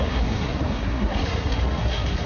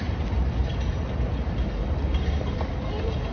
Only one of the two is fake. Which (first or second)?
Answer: first